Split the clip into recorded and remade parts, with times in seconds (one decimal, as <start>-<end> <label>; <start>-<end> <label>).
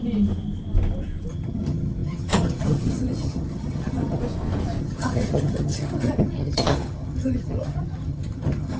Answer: 0.0-1.3 recorded; 1.3-4.2 remade; 4.2-4.8 recorded; 4.8-8.8 remade